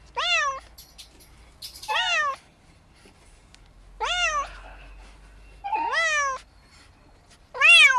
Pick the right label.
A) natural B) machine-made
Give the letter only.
A